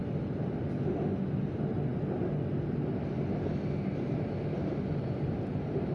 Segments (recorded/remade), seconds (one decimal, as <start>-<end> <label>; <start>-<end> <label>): 0.0-5.9 recorded